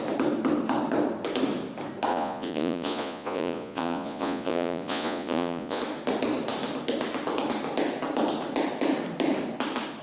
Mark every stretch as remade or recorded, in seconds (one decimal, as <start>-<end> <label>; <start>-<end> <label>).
0.0-2.1 recorded; 2.1-5.8 remade; 5.8-10.0 recorded